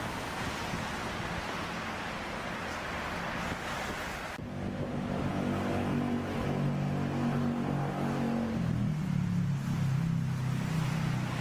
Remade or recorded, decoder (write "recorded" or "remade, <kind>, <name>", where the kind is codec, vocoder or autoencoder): recorded